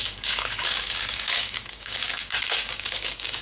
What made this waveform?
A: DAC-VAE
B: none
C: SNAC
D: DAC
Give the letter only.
D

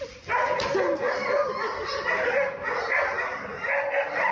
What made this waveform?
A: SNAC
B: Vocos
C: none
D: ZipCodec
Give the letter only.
C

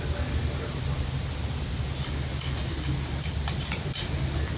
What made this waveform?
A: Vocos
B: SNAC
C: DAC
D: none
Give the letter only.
D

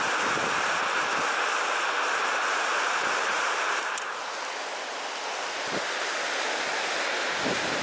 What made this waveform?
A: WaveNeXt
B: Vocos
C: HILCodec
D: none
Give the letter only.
D